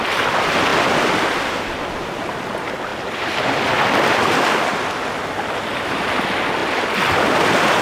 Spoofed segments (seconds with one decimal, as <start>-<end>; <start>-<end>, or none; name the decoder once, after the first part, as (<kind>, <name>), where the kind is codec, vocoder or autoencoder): none